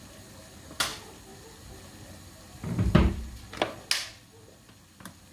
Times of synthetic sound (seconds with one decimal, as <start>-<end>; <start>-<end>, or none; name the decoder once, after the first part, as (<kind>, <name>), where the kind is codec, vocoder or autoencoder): none